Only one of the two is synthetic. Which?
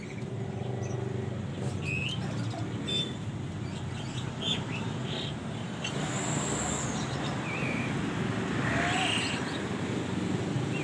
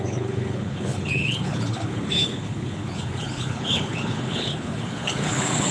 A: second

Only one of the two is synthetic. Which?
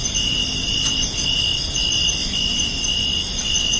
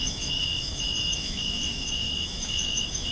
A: second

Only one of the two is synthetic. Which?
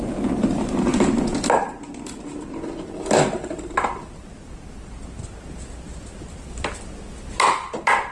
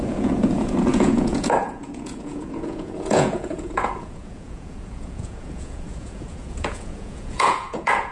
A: second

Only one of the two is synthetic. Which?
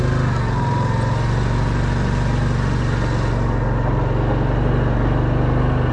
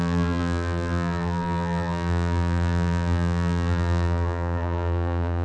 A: second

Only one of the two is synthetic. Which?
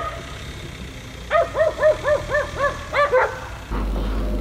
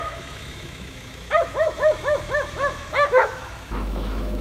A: second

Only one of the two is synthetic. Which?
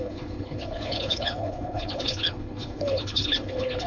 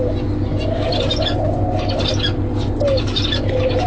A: first